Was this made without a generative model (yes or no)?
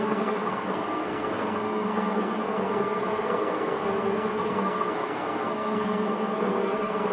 no